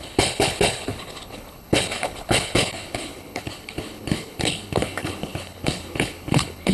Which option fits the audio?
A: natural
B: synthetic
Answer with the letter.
B